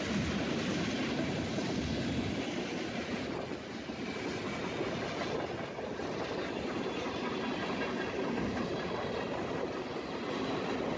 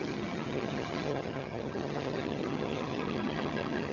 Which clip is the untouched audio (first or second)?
first